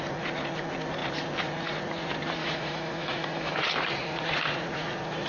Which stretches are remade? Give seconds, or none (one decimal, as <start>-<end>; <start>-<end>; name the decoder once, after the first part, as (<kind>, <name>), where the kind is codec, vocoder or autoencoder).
2.4-3.5 (autoencoder, DAC-VAE)